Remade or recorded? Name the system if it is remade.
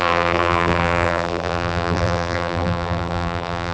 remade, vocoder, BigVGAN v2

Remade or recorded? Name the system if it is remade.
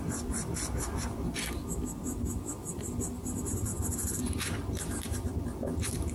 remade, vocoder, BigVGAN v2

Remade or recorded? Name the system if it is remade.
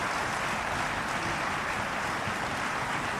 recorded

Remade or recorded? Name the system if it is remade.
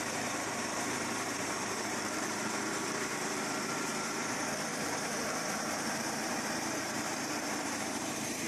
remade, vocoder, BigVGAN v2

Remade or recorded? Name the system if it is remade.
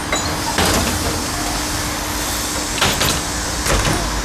recorded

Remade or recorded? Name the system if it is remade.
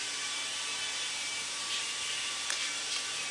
remade, vocoder, BigVGAN v2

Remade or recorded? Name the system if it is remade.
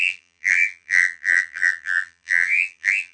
remade, vocoder, BigVGAN v2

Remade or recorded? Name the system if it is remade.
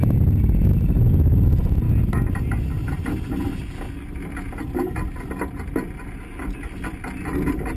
recorded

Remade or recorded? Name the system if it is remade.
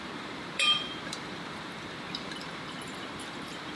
remade, vocoder, BigVGAN v2